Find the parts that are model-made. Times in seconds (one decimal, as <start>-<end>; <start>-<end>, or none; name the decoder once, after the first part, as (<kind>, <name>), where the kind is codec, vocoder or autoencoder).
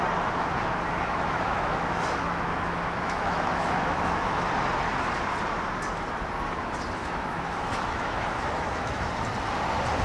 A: 0.9-4.5 (autoencoder, DAC-VAE); 7.0-9.1